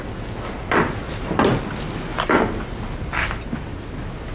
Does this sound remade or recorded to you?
recorded